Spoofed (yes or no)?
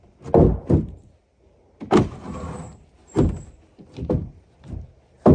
no